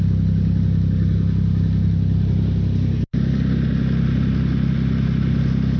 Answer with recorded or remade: recorded